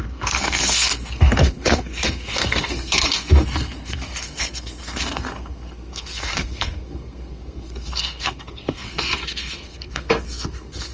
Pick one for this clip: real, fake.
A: fake